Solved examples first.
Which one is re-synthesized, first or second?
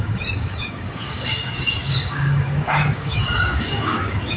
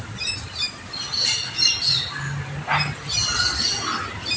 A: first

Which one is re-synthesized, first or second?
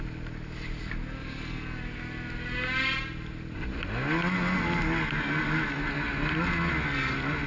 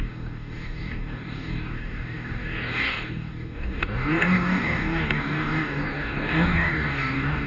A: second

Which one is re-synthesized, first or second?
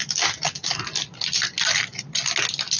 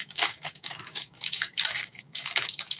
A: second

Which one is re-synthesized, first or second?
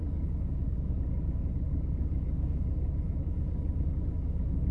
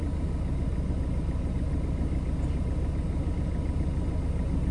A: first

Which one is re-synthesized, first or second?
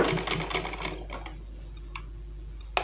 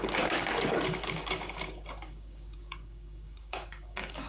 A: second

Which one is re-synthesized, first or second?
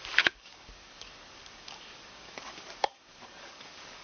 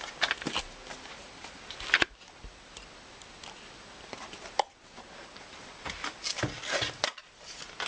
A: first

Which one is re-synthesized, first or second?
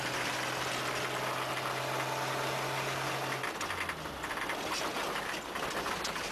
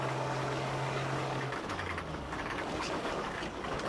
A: second